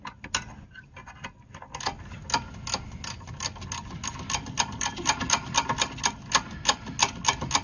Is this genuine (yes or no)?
yes